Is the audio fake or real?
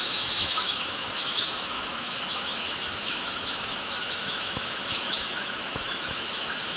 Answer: fake